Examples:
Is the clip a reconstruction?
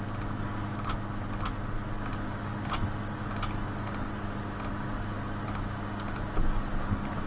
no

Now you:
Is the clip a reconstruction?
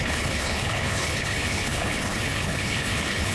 yes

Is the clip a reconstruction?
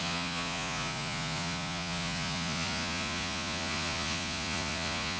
yes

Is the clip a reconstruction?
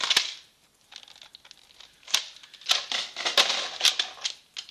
no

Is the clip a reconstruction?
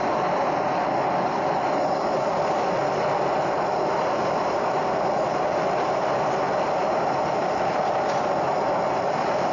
no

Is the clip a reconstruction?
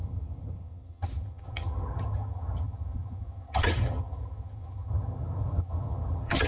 yes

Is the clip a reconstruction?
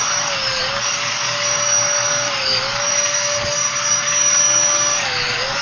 yes